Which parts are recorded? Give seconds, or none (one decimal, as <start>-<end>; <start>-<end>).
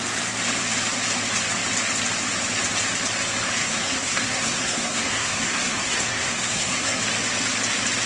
0.0-3.6; 7.0-8.1